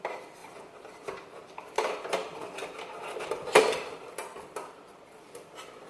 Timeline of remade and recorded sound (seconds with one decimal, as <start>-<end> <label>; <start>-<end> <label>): 0.0-5.9 recorded